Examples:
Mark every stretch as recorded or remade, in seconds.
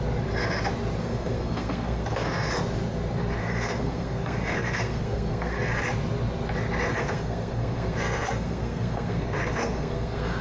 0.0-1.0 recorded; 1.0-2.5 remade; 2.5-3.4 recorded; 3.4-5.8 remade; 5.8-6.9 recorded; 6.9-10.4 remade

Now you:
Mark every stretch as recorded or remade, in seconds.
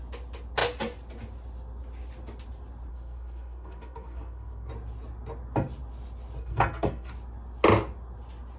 0.0-2.9 recorded; 2.9-4.7 remade; 4.7-6.4 recorded; 6.4-7.1 remade; 7.1-8.6 recorded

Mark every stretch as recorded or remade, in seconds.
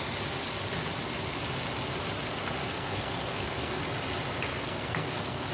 0.0-2.6 recorded; 2.6-3.8 remade; 3.8-4.5 recorded; 4.5-5.5 remade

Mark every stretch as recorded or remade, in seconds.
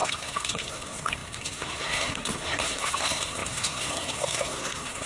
0.0-5.1 remade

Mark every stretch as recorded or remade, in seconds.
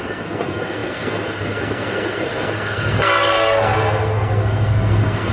0.0-5.3 remade